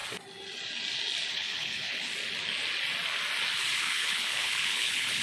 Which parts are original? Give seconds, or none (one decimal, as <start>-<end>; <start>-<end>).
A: 0.0-1.3; 2.1-3.8